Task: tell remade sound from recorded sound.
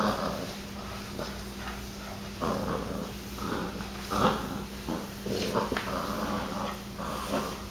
recorded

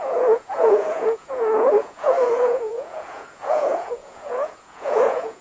remade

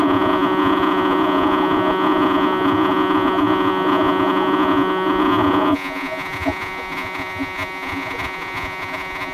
remade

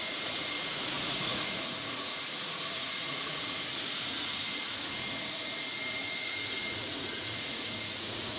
remade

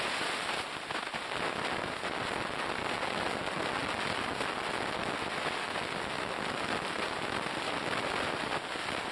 recorded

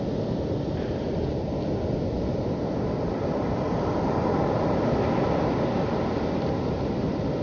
recorded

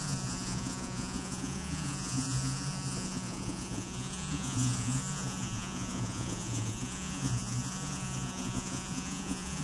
remade